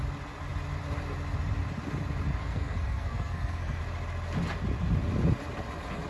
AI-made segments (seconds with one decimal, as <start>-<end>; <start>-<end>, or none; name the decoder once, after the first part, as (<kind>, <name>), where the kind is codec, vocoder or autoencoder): 2.4-3.8 (codec, SNAC)